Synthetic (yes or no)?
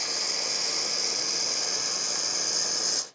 no